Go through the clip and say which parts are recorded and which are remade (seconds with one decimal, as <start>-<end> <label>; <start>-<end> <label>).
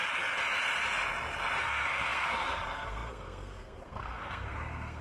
0.0-1.6 recorded; 1.6-5.0 remade